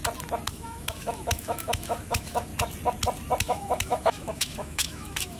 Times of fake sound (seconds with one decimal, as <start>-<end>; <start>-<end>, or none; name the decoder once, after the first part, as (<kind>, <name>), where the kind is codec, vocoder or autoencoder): 0.5-2.5 (autoencoder, DAC-VAE); 3.4-5.4